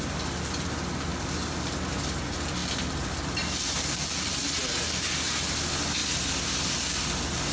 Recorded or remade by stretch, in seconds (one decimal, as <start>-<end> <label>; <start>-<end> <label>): 0.0-7.5 recorded